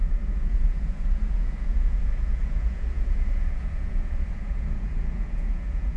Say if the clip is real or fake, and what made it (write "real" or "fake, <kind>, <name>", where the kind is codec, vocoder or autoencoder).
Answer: fake, vocoder, Vocos